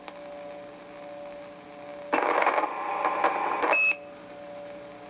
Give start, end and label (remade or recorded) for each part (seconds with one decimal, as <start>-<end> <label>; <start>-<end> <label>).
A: 0.0-5.1 recorded